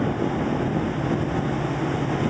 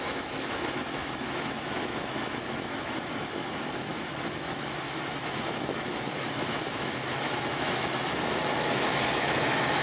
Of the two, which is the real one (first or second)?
first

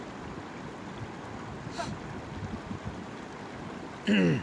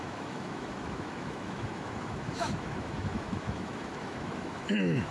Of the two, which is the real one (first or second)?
first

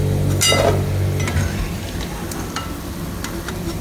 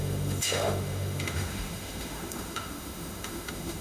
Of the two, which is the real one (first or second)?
first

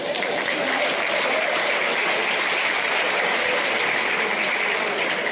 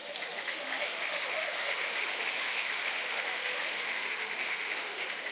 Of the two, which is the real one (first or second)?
first